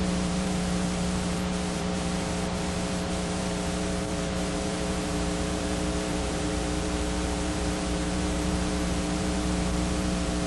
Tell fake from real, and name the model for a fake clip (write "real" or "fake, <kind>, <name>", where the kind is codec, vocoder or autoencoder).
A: fake, vocoder, BigVGAN v2